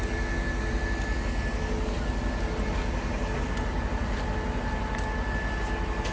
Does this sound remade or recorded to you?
recorded